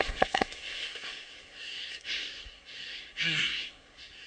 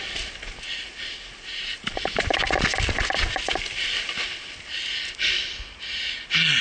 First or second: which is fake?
first